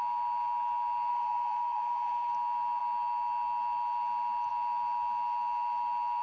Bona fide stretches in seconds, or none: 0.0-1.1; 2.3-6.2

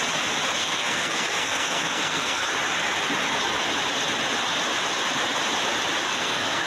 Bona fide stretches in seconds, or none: 0.0-0.6; 2.5-6.1

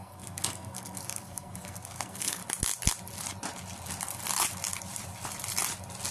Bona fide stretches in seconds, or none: 2.4-6.1

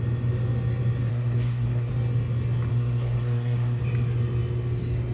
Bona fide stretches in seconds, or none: 0.0-1.1; 1.9-2.7; 3.8-5.1

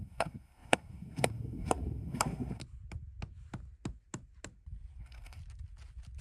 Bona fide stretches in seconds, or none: 2.6-5.0; 5.4-6.2

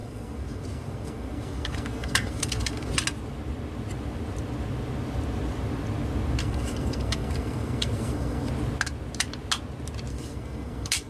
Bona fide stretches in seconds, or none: 2.9-6.4; 8.5-10.1

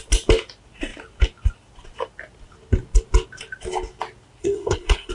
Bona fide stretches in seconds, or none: 0.0-4.4